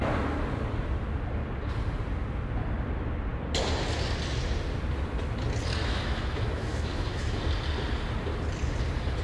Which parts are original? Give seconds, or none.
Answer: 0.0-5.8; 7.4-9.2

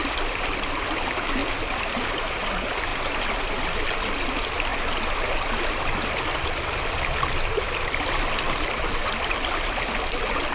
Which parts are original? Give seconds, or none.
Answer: 0.0-10.5

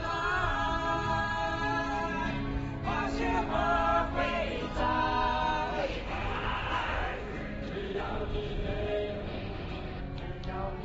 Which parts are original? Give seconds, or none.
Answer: 0.0-5.8; 10.0-10.8

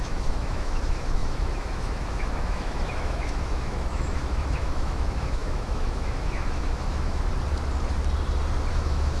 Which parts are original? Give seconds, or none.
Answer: 7.3-8.7

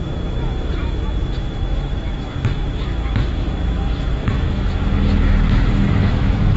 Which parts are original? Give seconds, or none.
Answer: none

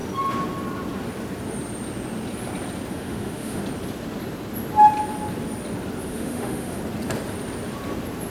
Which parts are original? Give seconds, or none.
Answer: 0.0-2.9; 3.6-6.1; 6.8-8.3

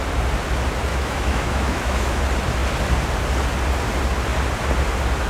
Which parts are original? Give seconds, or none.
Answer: 0.0-0.9; 2.2-5.3